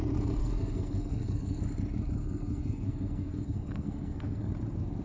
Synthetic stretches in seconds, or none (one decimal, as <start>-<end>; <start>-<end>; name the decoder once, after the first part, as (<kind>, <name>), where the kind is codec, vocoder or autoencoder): 0.4-1.6 (codec, SNAC); 2.2-4.5